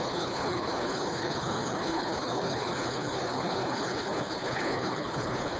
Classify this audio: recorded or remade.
remade